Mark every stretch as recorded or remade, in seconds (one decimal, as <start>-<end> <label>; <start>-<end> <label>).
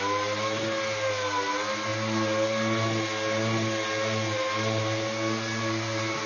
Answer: 0.0-6.3 recorded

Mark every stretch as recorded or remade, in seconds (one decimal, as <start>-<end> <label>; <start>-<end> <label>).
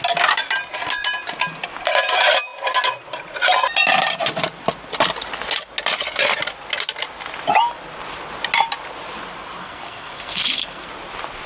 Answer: 0.0-9.6 recorded; 9.6-10.9 remade; 10.9-11.5 recorded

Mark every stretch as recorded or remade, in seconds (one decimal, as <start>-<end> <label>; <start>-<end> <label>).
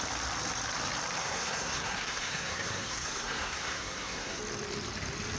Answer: 0.0-1.2 recorded; 1.2-4.4 remade; 4.4-5.4 recorded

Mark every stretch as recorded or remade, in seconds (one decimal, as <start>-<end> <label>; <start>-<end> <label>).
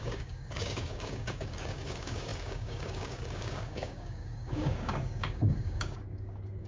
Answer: 0.0-6.7 remade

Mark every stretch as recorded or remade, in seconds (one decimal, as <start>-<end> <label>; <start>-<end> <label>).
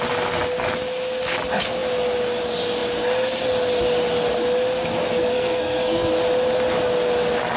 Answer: 0.0-5.3 recorded; 5.3-6.1 remade; 6.1-7.6 recorded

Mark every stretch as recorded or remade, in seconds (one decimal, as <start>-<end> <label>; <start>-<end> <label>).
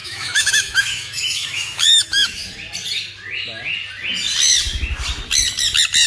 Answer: 0.0-2.4 remade; 2.4-6.1 recorded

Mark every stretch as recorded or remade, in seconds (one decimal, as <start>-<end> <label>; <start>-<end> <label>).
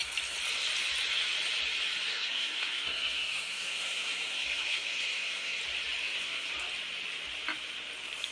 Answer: 0.0-2.1 recorded; 2.1-5.6 remade; 5.6-6.0 recorded; 6.0-6.5 remade; 6.5-8.3 recorded